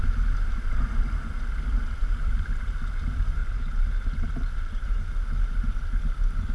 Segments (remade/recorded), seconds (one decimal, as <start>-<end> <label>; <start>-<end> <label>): 0.0-3.4 recorded; 3.4-5.1 remade; 5.1-6.5 recorded